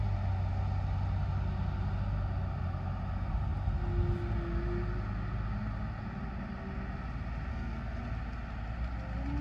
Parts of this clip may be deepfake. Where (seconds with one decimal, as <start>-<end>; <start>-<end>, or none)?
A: 7.5-8.0